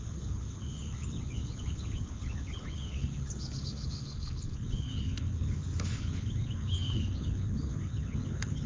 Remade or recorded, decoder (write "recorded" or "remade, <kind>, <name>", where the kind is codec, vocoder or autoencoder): remade, codec, HILCodec